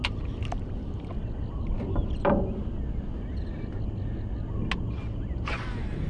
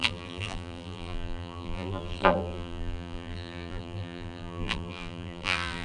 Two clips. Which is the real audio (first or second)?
first